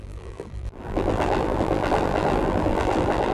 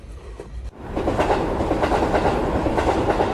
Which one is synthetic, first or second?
first